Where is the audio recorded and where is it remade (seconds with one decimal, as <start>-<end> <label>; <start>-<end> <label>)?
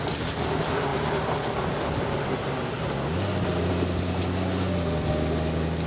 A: 0.0-5.9 recorded